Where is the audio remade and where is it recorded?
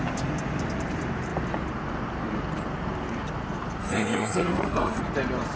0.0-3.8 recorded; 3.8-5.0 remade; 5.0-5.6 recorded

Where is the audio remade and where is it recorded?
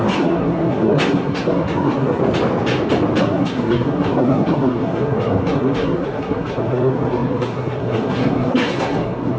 0.0-2.2 remade; 2.2-3.2 recorded; 3.2-9.4 remade